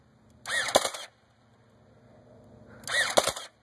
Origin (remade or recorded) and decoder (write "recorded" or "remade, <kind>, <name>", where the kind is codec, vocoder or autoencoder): recorded